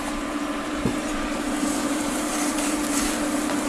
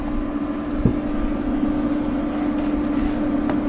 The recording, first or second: second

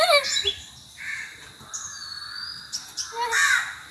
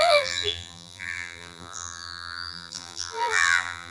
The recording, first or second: first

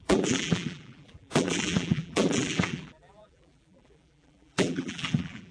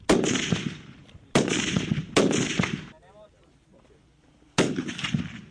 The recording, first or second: second